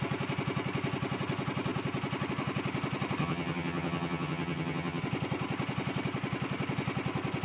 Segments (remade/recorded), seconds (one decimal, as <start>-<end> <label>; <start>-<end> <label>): 0.0-3.2 recorded; 3.2-5.0 remade; 5.0-7.4 recorded